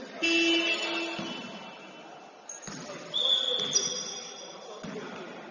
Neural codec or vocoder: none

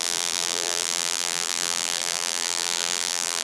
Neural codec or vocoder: vocoder, BigVGAN v2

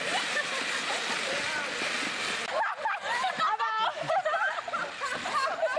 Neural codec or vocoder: none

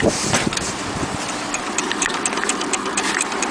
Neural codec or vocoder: vocoder, BigVGAN v2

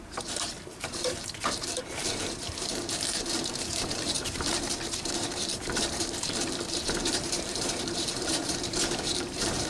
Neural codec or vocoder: vocoder, BigVGAN v2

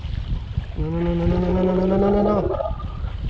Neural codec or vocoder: none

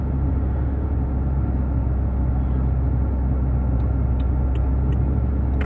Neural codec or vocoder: none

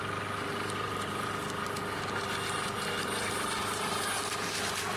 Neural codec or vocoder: none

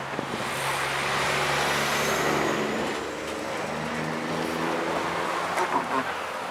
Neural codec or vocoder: none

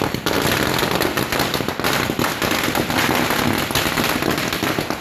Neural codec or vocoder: none